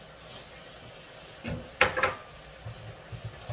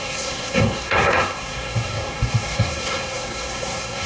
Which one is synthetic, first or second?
second